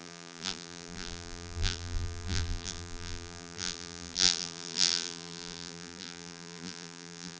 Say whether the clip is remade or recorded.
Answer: remade